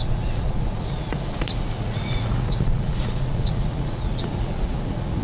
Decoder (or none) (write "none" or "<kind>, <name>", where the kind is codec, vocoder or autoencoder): vocoder, Vocos